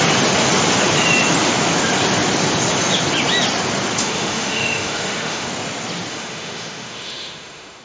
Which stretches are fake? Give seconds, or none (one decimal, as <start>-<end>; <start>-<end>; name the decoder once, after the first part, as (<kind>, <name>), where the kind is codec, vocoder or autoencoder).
4.0-5.5 (autoencoder, DAC-VAE); 6.1-7.8